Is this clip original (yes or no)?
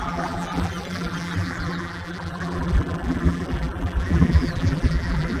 no